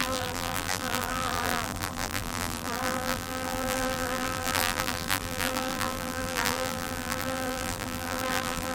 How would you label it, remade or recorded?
remade